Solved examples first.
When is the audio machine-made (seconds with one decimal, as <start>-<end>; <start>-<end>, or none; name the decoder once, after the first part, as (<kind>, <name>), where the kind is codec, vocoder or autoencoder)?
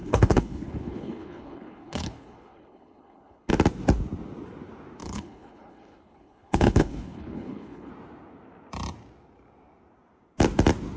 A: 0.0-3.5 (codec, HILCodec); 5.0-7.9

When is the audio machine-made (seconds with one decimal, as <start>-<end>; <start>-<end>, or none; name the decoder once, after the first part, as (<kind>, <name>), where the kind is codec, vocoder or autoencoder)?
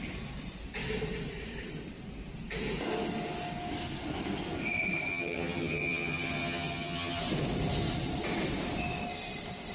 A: 5.1-7.2 (vocoder, HiFi-GAN)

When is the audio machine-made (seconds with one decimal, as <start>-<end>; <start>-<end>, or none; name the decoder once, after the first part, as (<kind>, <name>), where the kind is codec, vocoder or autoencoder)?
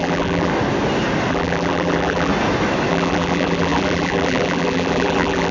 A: 0.0-0.5 (vocoder, BigVGAN v2); 1.3-2.3; 2.9-5.5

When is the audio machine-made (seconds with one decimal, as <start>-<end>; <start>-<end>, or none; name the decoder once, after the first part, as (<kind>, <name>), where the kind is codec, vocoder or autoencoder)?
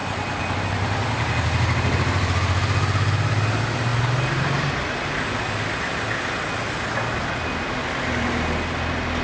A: none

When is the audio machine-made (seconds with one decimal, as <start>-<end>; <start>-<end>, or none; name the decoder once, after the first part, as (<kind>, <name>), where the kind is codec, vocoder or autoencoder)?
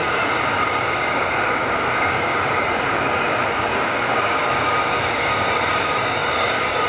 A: 0.0-6.9 (codec, DAC)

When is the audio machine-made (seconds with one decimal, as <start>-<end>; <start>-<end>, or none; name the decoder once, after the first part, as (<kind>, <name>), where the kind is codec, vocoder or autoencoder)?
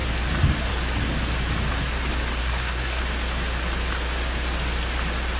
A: 2.4-3.0 (codec, SNAC)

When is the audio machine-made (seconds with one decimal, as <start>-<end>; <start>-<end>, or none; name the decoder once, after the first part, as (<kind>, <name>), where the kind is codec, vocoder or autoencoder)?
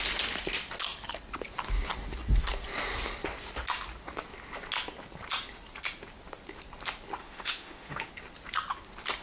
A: 7.2-8.1 (autoencoder, DAC-VAE)